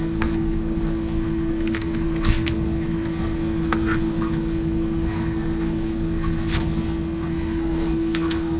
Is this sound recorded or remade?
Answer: remade